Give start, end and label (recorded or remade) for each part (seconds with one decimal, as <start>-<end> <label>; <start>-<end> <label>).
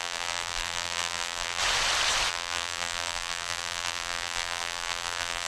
0.0-1.6 remade; 1.6-2.3 recorded; 2.3-5.5 remade